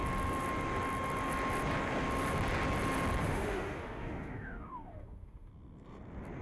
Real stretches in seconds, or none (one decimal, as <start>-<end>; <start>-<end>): 0.0-3.2; 5.5-6.4